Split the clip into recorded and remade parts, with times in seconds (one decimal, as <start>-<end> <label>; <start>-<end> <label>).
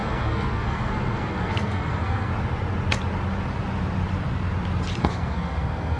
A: 0.0-2.3 remade; 2.3-5.0 recorded; 5.0-6.0 remade